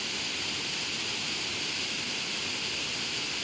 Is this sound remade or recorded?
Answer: recorded